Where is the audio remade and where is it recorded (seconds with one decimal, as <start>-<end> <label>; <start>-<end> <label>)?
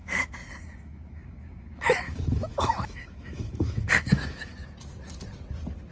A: 0.0-4.5 remade; 4.5-5.9 recorded